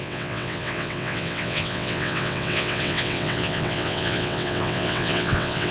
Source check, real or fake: fake